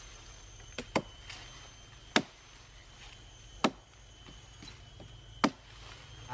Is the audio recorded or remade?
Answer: recorded